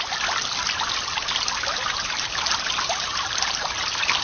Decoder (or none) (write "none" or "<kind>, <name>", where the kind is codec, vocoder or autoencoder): none